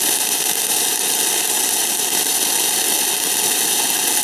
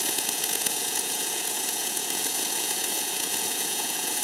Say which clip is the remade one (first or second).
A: second